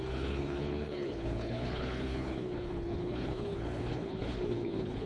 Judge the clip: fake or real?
fake